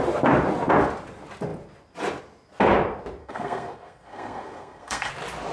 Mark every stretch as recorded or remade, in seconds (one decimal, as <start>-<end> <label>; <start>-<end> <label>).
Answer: 0.0-3.2 recorded; 3.2-5.1 remade; 5.1-5.5 recorded